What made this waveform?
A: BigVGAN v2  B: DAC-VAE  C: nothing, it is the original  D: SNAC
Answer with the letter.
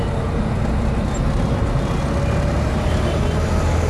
C